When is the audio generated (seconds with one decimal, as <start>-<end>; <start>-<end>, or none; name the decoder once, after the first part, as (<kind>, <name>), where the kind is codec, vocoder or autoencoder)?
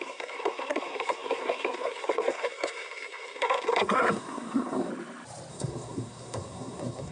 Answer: 0.0-4.9 (codec, SNAC); 5.5-7.1